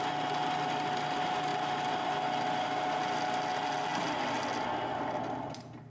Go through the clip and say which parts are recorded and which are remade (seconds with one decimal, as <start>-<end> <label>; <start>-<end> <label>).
0.0-5.9 recorded